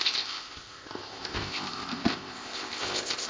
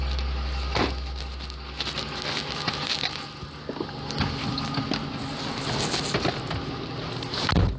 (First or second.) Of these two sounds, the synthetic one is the first